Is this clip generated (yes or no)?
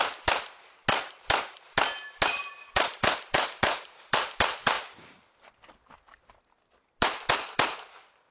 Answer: no